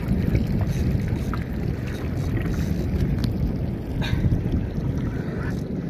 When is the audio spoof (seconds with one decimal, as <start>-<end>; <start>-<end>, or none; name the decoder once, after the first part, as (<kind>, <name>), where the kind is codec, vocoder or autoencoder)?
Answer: none